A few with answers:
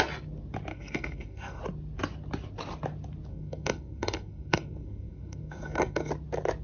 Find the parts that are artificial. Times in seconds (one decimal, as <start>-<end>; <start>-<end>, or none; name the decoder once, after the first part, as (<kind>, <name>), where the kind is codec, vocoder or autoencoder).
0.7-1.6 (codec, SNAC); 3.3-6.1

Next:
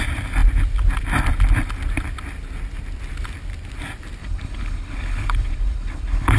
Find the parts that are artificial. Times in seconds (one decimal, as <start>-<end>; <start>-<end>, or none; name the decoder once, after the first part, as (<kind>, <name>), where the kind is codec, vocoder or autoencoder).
4.2-6.4 (codec, HILCodec)

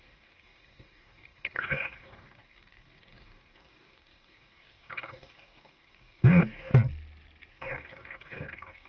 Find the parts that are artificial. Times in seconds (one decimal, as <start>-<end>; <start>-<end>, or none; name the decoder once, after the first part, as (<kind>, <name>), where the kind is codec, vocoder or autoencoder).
0.0-6.7 (codec, DAC); 7.5-8.9